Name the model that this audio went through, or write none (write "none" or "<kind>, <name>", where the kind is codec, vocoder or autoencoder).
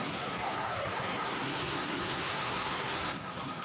codec, SNAC